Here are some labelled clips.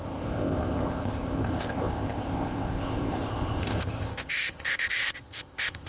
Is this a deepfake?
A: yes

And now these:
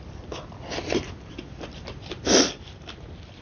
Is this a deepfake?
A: no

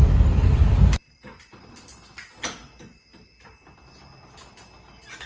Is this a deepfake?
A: no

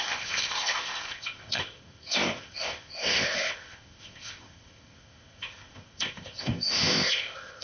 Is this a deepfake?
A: yes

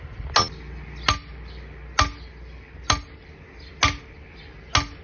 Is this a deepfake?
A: no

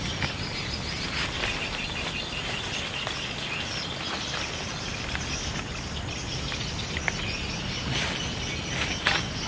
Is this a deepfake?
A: no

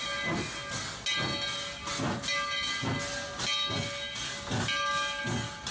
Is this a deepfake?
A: no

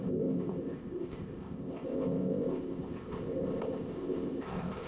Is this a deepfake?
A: yes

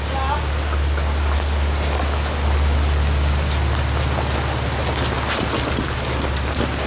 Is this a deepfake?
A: no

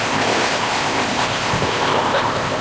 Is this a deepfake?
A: yes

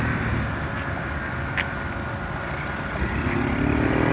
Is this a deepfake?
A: no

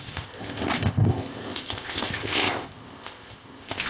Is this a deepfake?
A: yes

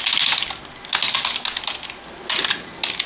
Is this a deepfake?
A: no